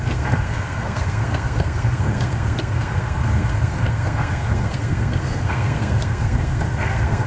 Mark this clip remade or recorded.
remade